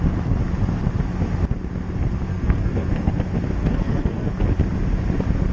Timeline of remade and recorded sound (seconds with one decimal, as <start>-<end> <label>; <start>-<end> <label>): 0.0-2.3 recorded; 2.3-3.1 remade; 3.1-3.6 recorded; 3.6-4.3 remade; 4.3-5.5 recorded